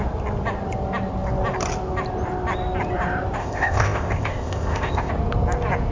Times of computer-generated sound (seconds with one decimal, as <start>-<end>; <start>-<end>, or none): 3.4-5.1